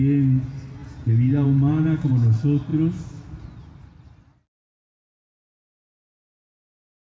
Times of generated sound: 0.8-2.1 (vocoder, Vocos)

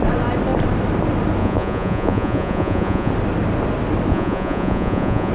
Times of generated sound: 1.4-3.1 (vocoder, Vocos); 4.1-5.3